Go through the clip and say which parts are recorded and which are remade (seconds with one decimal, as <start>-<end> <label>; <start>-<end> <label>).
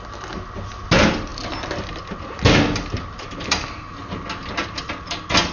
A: 0.0-5.5 recorded